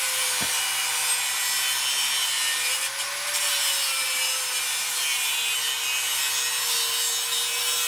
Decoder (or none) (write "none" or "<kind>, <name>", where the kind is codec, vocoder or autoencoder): none